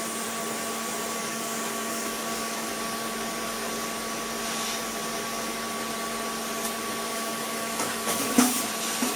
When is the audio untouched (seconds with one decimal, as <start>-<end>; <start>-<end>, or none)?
0.0-1.2; 2.7-7.1; 8.7-9.2